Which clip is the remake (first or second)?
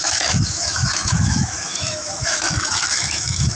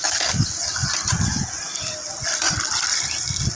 first